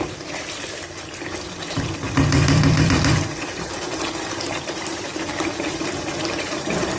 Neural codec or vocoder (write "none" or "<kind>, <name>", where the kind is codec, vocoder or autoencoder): vocoder, BigVGAN v2